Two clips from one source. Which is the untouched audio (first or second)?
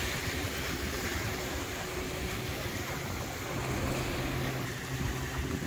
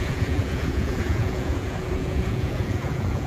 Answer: first